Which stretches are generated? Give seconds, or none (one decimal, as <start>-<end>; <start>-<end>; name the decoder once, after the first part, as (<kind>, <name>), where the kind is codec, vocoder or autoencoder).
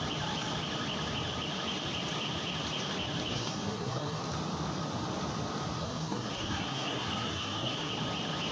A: 3.3-4.2 (codec, SNAC); 5.8-7.9